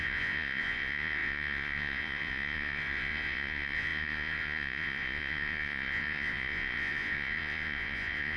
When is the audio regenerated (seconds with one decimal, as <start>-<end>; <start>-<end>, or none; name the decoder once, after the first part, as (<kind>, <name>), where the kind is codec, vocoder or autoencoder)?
0.0-8.4 (vocoder, Vocos)